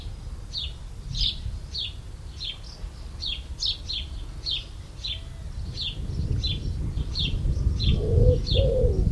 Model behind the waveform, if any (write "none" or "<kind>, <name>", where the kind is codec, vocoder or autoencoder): none